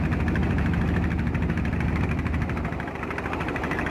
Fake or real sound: real